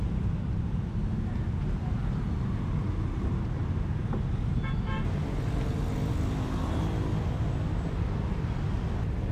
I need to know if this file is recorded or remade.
recorded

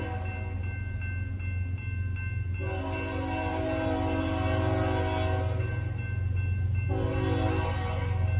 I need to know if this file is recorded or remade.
recorded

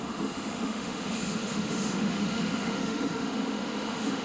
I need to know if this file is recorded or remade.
remade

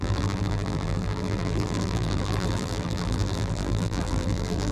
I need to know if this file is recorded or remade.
remade